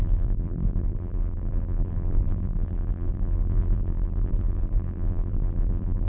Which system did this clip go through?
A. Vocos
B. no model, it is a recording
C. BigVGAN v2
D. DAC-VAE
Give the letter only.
C